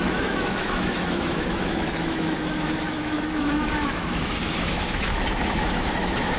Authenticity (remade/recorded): remade